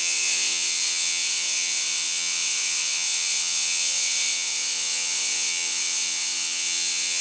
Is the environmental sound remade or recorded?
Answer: remade